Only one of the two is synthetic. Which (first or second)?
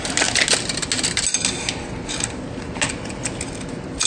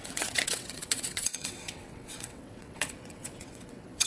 second